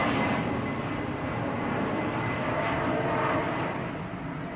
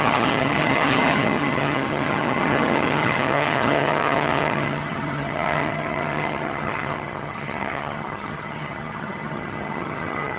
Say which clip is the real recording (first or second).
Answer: first